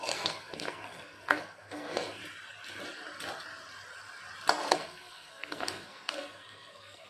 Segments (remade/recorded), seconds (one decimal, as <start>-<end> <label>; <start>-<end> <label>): 0.0-2.2 remade; 2.2-4.7 recorded; 4.7-7.1 remade